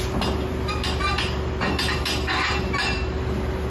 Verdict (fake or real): real